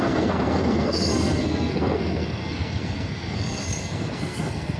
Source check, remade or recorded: remade